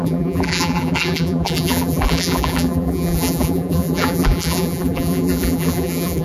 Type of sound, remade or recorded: remade